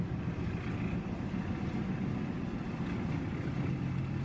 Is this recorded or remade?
recorded